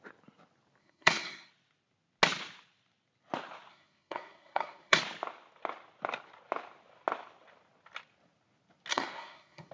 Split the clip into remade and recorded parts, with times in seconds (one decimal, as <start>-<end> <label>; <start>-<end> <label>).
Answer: 0.0-0.8 recorded; 0.8-1.5 remade; 1.5-3.7 recorded; 3.7-5.0 remade; 5.0-8.9 recorded; 8.9-9.7 remade